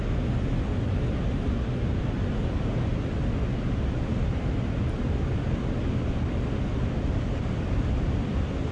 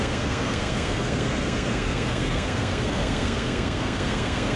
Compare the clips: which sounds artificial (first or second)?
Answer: second